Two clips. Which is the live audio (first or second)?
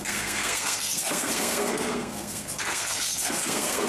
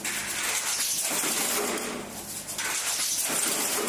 second